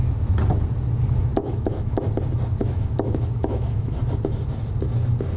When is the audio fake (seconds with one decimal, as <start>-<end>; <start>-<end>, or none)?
1.4-2.0; 2.6-4.0